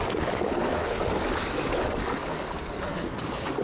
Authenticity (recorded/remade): remade